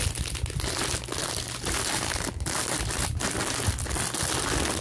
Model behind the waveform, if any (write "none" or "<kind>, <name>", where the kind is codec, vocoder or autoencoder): none